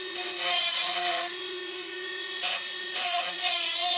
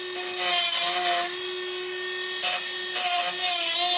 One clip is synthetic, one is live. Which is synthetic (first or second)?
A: first